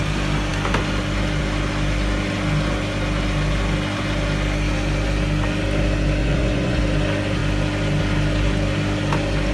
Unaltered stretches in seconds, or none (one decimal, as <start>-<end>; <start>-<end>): 0.0-6.2; 6.8-9.5